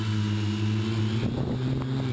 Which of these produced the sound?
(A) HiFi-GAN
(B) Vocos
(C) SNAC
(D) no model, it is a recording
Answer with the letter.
D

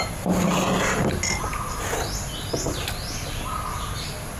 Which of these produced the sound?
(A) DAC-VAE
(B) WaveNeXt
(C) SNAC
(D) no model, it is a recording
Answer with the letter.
D